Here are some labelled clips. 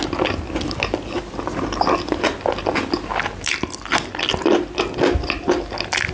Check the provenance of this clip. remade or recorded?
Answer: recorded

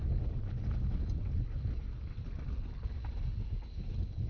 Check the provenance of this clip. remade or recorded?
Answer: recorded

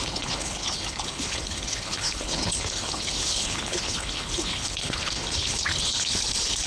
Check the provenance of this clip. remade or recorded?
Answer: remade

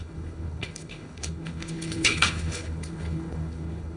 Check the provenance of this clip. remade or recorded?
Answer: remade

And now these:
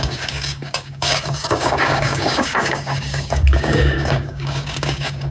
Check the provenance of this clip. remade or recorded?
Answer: remade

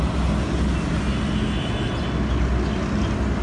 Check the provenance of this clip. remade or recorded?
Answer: recorded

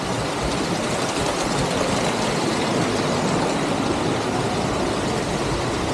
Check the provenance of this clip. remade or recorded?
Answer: recorded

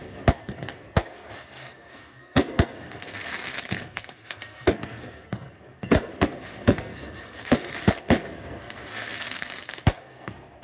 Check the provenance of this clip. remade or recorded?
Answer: remade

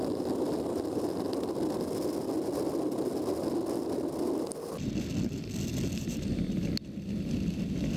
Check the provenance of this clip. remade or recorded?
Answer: recorded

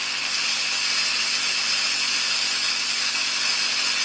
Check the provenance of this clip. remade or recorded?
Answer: recorded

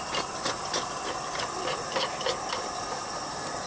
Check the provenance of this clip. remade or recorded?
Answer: recorded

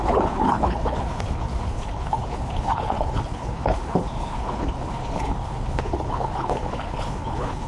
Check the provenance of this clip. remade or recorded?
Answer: remade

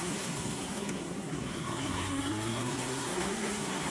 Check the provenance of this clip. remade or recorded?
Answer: remade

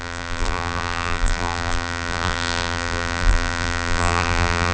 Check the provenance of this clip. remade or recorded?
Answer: remade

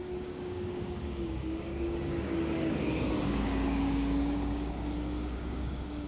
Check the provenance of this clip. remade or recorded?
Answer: remade